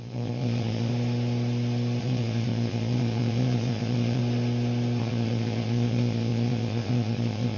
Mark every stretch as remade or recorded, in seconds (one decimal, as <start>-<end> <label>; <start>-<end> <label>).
0.0-0.9 remade; 0.9-2.0 recorded; 2.0-4.2 remade; 4.2-5.0 recorded; 5.0-7.6 remade